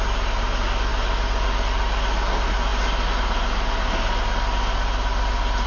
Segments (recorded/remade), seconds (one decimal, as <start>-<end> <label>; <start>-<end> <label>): 0.0-5.7 recorded